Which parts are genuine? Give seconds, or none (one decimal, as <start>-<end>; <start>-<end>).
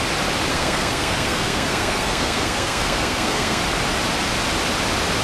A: 0.0-0.5; 3.6-5.2